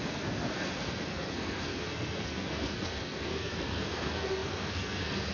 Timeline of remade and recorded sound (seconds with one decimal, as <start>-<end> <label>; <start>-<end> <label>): 0.0-5.3 remade